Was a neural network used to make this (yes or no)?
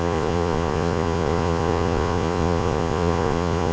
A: yes